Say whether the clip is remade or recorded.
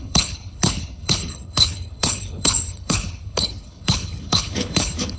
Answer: remade